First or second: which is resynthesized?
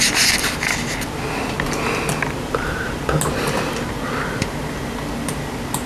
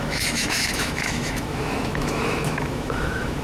second